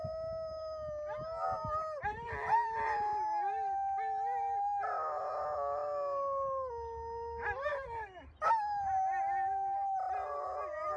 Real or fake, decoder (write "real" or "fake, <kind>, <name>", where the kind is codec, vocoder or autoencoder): real